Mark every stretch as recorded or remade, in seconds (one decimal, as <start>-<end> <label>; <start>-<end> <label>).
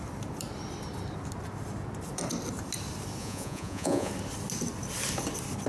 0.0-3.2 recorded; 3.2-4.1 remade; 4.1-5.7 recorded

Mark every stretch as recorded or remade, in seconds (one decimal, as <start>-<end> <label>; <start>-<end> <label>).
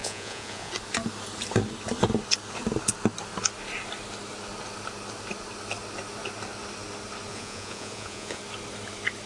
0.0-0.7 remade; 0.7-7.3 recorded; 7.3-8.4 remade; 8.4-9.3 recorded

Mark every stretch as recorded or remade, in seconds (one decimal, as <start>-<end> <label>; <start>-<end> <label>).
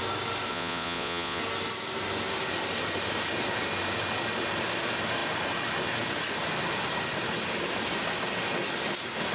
0.0-0.5 recorded; 0.5-1.4 remade; 1.4-9.3 recorded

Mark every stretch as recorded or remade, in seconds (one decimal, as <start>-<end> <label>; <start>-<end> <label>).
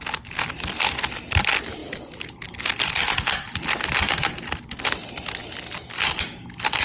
0.0-6.8 recorded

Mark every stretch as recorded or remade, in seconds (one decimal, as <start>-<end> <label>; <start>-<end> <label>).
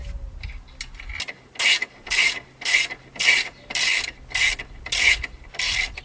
0.0-6.0 recorded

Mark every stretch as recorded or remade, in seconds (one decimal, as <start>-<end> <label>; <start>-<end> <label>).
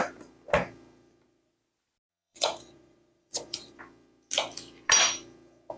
0.0-2.1 recorded; 2.1-3.8 remade; 3.8-5.8 recorded